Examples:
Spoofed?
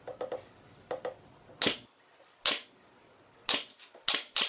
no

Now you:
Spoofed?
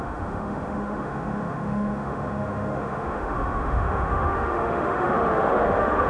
yes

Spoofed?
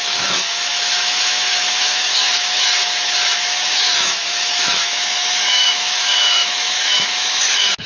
yes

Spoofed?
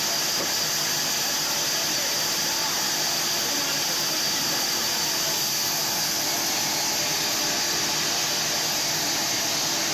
no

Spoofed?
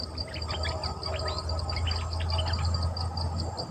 no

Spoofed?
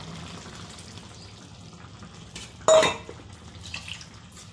no